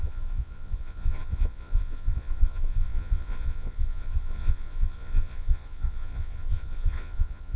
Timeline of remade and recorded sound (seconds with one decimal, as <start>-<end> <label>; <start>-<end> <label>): 0.0-7.6 remade